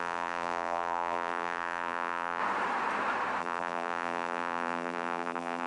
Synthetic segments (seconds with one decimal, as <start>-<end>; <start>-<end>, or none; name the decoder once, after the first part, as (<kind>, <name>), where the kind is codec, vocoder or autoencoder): 0.0-2.4 (vocoder, BigVGAN v2); 3.4-5.7